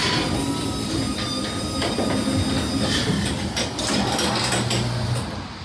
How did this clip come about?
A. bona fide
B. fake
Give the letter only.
A